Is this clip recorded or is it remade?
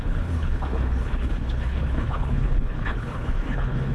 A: remade